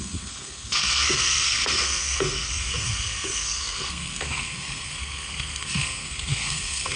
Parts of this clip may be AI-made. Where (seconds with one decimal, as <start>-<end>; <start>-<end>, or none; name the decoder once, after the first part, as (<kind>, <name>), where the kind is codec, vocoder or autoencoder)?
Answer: 0.0-7.0 (codec, SNAC)